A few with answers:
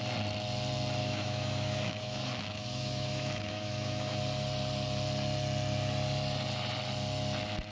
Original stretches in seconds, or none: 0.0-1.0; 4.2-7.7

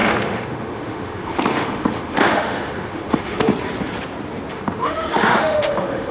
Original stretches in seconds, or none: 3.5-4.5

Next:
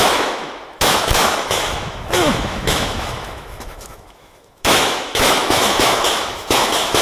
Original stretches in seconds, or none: none

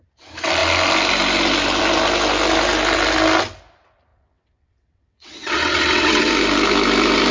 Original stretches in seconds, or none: 0.0-4.1; 6.3-7.3